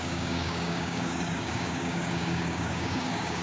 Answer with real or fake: fake